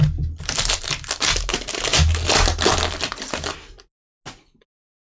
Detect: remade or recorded recorded